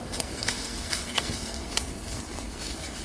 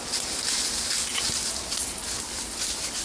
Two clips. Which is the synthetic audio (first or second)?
first